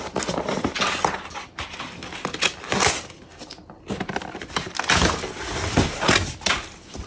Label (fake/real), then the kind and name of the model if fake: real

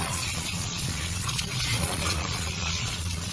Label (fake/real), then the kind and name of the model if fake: fake, vocoder, Vocos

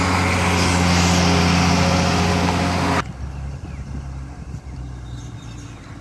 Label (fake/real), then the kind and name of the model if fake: real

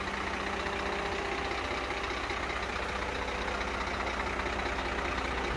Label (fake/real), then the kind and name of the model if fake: real